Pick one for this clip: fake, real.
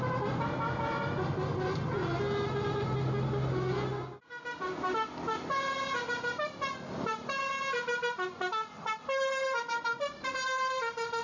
real